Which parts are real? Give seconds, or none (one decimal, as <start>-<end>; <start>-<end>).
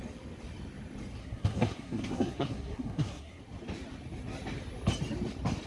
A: 0.0-1.2; 3.4-5.7